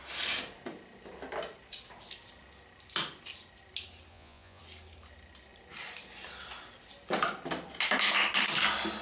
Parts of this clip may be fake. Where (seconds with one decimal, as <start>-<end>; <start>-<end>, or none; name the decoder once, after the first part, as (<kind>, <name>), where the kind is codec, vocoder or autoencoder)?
4.1-4.6 (vocoder, Vocos)